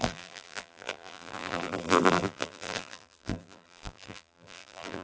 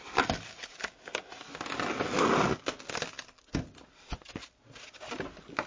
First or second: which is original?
second